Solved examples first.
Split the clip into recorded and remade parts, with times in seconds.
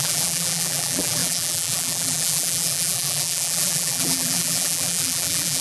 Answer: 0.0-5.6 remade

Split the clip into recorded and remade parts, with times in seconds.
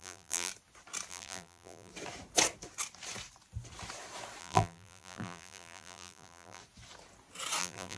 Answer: 0.0-0.5 remade; 0.5-1.1 recorded; 1.1-1.9 remade; 1.9-4.4 recorded; 4.4-6.6 remade; 6.6-7.6 recorded; 7.6-8.0 remade